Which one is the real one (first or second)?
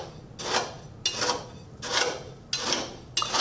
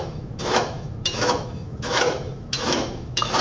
first